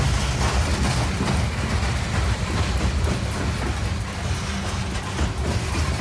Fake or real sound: real